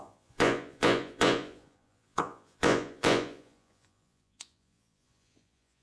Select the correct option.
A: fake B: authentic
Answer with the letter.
A